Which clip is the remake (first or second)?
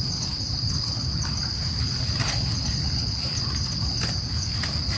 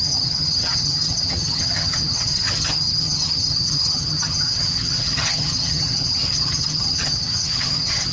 second